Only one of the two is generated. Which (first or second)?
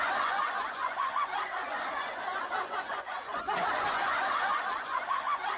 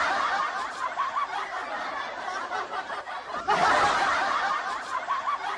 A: first